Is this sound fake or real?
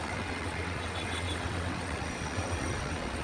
fake